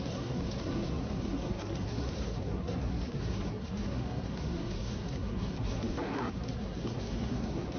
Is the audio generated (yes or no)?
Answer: yes